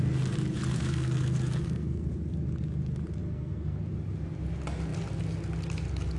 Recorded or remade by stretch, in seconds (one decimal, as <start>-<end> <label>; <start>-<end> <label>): 0.0-0.8 recorded; 0.8-2.1 remade; 2.1-3.2 recorded; 3.2-3.8 remade; 3.8-6.2 recorded